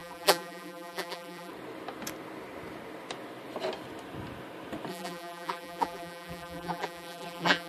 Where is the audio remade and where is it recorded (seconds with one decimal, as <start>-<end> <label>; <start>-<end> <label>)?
0.0-1.5 remade; 1.5-4.9 recorded; 4.9-7.7 remade